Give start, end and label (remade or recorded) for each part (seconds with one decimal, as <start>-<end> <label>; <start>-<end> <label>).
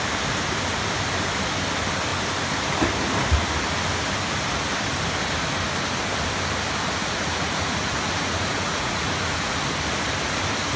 0.0-7.0 recorded; 7.0-9.6 remade; 9.6-10.8 recorded